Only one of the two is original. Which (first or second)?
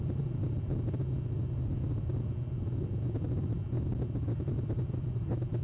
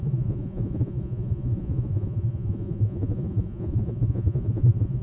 first